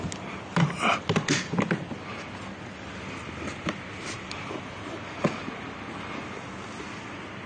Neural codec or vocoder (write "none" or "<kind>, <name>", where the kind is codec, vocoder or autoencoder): none